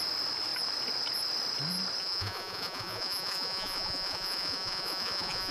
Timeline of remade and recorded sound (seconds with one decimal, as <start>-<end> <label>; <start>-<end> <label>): 0.0-2.0 recorded; 2.0-5.5 remade